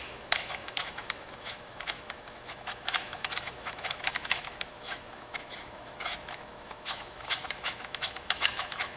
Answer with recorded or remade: remade